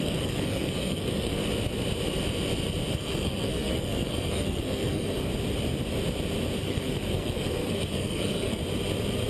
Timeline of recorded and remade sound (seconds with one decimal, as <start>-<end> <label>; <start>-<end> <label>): 0.0-1.4 remade; 1.4-2.9 recorded; 2.9-5.3 remade; 5.3-6.6 recorded; 6.6-8.6 remade; 8.6-9.3 recorded